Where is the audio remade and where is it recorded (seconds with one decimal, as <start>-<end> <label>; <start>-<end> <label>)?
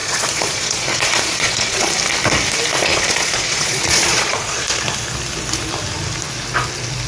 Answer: 0.0-1.9 remade; 1.9-2.7 recorded; 2.7-4.8 remade; 4.8-7.1 recorded